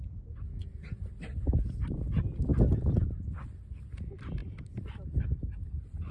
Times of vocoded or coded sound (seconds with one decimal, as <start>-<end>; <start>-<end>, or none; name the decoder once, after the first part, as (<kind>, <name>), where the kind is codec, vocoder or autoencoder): 0.6-1.1 (vocoder, Vocos)